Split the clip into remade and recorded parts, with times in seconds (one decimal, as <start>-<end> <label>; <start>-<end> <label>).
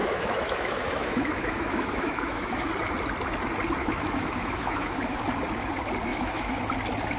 0.0-2.7 remade; 2.7-3.8 recorded; 3.8-5.2 remade; 5.2-6.1 recorded; 6.1-6.6 remade; 6.6-7.2 recorded